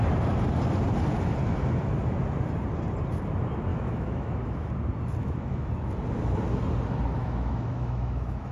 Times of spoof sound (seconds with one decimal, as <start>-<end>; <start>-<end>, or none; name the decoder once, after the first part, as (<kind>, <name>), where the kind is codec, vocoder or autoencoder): 3.7-4.7 (autoencoder, DAC-VAE); 5.2-5.7; 7.2-8.5